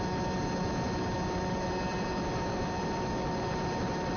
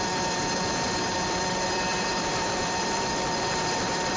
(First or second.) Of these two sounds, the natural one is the first